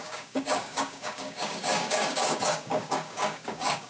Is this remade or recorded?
remade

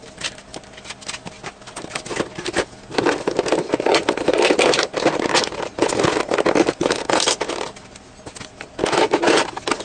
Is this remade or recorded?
recorded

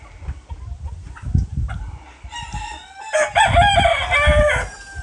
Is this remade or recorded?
recorded